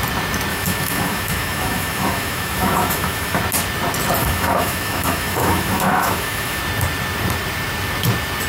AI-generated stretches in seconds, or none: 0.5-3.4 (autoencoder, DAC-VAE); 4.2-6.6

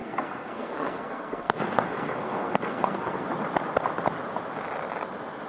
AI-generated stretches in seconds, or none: 0.0-3.3 (codec, SNAC)

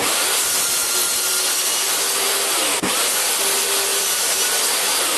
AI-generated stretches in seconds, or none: none

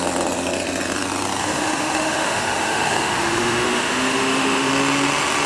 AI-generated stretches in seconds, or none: 1.4-4.7 (autoencoder, DAC-VAE)

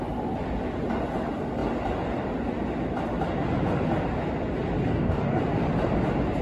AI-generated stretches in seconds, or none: 4.9-5.4 (codec, DAC)

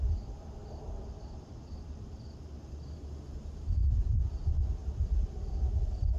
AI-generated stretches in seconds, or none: none

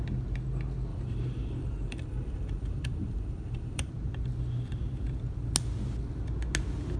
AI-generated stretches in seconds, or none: 0.9-3.9 (vocoder, BigVGAN v2)